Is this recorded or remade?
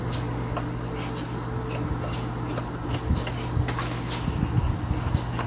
recorded